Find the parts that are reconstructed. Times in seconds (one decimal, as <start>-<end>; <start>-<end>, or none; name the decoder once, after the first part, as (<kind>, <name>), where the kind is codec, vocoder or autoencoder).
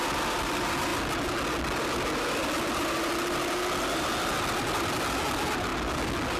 none